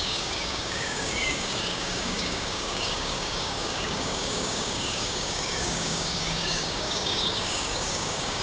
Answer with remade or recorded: remade